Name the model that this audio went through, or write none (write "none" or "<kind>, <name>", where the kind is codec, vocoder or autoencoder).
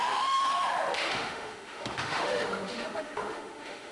autoencoder, DAC-VAE